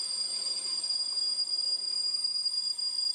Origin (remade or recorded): recorded